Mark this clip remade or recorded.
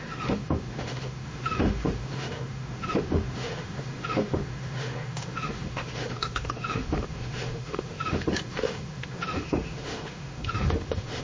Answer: remade